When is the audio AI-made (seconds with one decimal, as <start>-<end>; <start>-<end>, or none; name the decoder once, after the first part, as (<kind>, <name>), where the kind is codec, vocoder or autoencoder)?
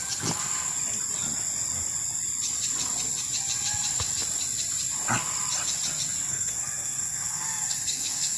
6.3-8.4 (codec, SNAC)